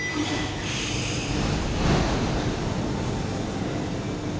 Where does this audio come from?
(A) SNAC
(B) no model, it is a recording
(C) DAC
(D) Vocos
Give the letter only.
B